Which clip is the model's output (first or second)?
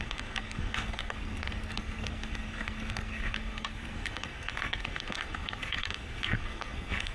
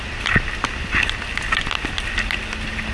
first